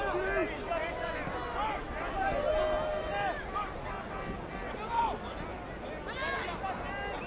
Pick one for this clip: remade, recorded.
recorded